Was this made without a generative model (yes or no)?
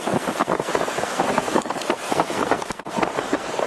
no